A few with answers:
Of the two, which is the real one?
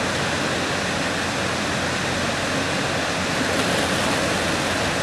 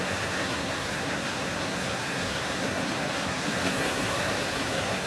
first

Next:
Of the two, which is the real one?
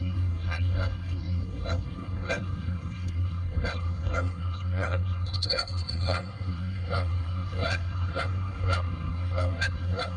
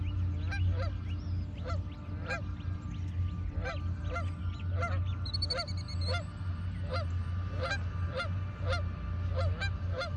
second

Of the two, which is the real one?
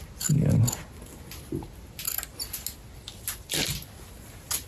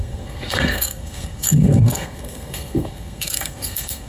first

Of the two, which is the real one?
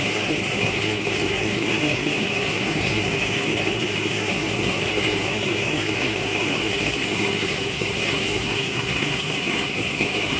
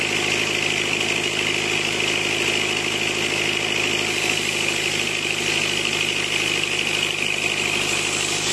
second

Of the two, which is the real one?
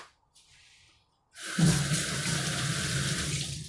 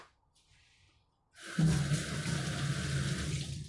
second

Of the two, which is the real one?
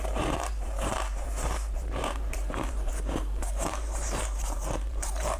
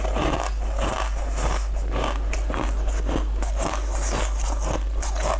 second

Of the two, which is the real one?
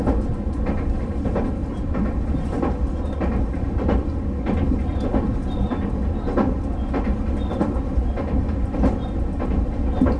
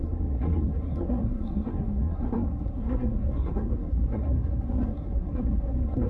first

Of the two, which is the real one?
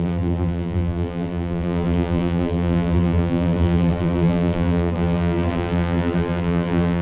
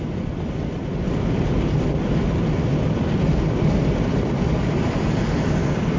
second